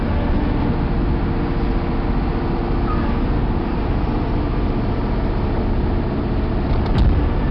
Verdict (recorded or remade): recorded